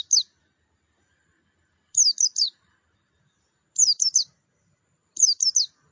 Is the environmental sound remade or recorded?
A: recorded